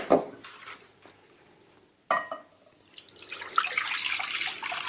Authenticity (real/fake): real